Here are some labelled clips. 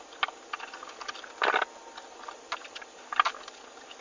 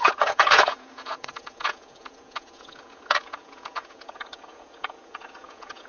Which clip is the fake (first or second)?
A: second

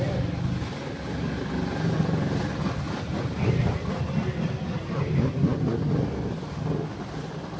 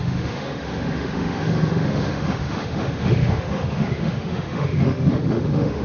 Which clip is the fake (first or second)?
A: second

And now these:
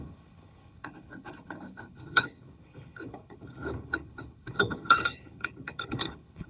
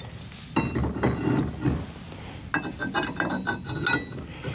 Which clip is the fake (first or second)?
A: first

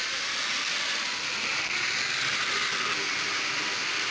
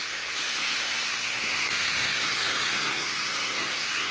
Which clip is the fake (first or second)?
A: second